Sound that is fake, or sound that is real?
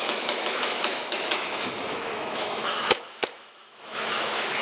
fake